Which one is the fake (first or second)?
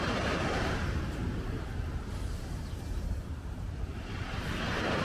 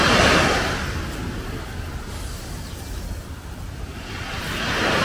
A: first